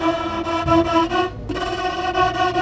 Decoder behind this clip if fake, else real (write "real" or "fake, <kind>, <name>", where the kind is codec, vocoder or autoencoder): real